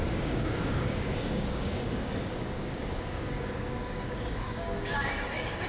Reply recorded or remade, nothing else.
remade